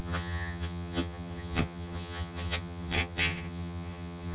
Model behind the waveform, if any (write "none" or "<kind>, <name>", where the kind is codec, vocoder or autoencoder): vocoder, HiFi-GAN